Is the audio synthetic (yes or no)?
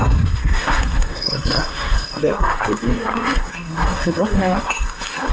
yes